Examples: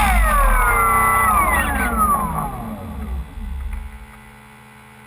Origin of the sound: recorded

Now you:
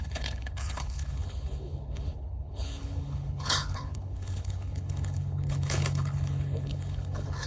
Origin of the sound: remade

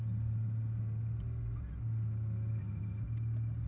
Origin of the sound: recorded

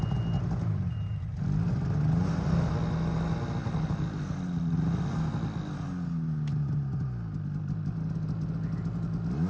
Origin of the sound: recorded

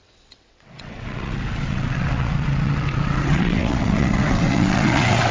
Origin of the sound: remade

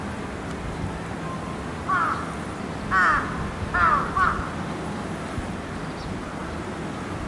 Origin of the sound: recorded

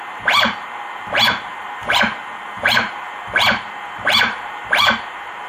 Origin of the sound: remade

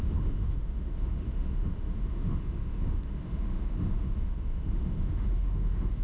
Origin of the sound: remade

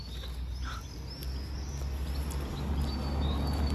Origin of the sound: recorded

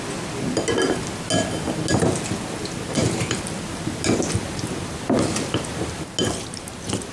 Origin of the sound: recorded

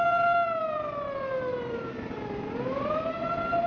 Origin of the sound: recorded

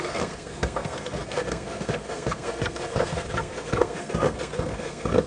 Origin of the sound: remade